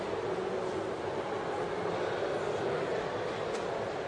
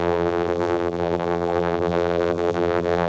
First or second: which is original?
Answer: first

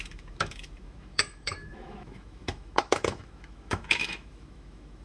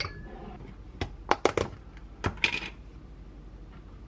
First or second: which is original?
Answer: second